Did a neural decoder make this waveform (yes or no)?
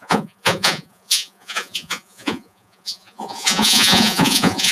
yes